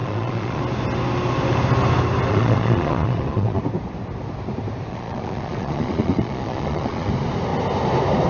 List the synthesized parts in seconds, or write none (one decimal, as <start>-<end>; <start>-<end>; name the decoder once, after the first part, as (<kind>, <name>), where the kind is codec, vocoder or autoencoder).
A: 0.0-0.6 (vocoder, Vocos); 2.3-3.6; 4.9-7.1